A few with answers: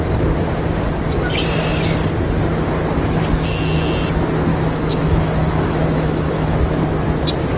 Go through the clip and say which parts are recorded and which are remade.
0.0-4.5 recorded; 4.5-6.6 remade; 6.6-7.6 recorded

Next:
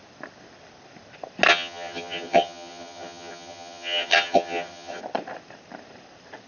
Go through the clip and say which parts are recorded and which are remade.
0.0-1.5 recorded; 1.5-5.0 remade; 5.0-6.5 recorded

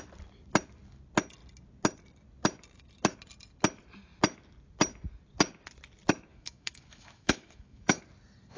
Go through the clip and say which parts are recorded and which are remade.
0.0-6.3 recorded; 6.3-8.0 remade; 8.0-8.6 recorded